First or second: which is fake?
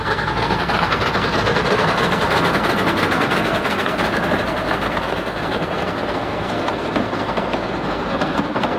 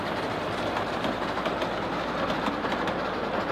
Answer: first